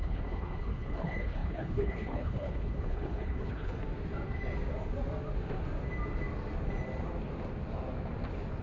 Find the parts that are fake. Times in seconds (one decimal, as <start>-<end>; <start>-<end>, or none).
0.0-3.8